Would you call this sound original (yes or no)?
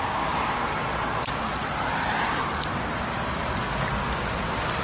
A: yes